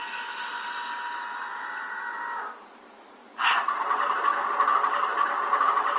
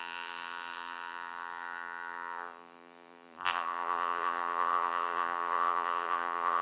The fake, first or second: second